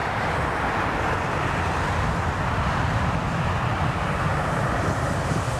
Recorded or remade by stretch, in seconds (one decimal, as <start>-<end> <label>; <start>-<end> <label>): 0.0-4.3 recorded; 4.3-5.6 remade